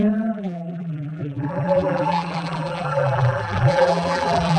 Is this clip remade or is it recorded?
remade